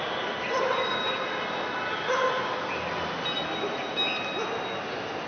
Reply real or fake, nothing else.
real